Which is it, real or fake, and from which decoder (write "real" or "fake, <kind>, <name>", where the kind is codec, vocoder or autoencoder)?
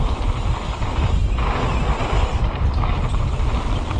real